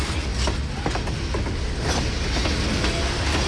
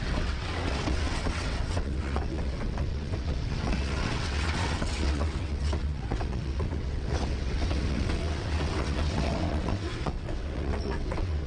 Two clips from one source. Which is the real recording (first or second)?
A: first